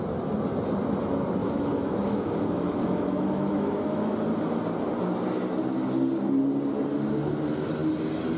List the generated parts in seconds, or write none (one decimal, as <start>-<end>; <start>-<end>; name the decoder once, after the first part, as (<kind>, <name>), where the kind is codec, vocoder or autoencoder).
1.4-4.1 (autoencoder, DAC-VAE)